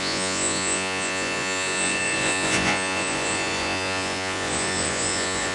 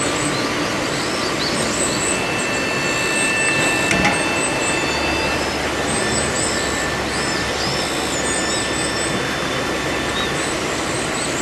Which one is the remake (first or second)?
first